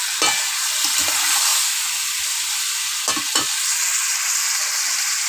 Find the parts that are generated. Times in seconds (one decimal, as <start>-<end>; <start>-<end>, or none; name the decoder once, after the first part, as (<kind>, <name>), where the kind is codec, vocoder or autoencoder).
0.0-3.7 (vocoder, BigVGAN v2); 4.6-5.3